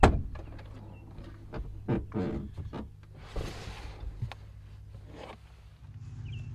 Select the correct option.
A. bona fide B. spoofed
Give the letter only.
A